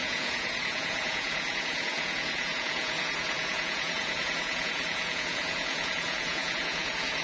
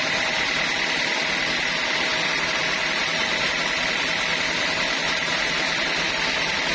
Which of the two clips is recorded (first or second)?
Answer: second